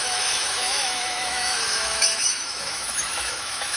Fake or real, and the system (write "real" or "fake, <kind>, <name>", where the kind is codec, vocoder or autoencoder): fake, autoencoder, DAC-VAE